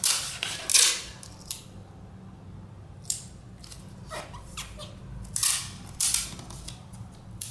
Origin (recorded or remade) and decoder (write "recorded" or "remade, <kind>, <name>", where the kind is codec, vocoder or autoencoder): recorded